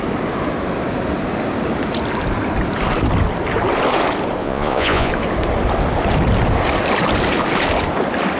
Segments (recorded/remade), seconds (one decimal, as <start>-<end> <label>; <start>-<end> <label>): 0.0-4.4 recorded; 4.4-5.1 remade; 5.1-8.4 recorded